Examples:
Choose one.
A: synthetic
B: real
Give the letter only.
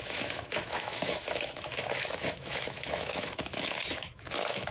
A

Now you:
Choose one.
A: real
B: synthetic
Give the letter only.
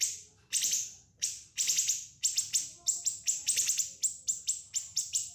A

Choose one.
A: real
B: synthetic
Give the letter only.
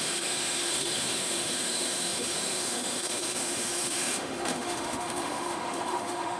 B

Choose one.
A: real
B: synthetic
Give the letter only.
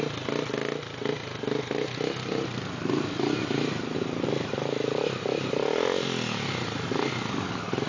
A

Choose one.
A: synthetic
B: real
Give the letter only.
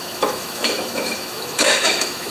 A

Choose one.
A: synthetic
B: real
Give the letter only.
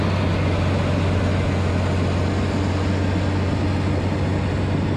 B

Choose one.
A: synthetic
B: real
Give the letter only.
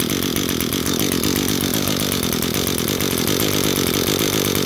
B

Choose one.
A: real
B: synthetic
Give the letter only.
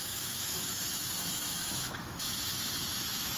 B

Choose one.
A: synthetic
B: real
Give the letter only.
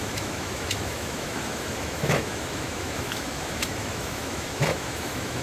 A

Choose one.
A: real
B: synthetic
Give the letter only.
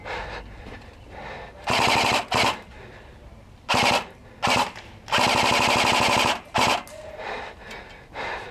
A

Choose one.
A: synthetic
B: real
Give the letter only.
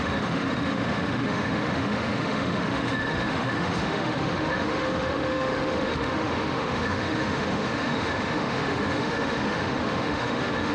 A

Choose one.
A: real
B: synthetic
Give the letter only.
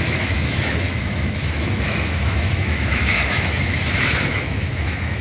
B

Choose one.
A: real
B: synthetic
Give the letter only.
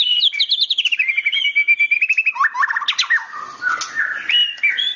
A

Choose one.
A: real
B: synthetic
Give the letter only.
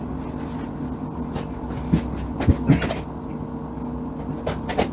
A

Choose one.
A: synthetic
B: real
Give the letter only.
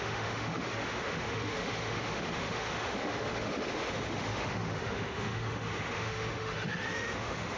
A